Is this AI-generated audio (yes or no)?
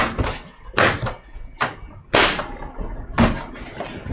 no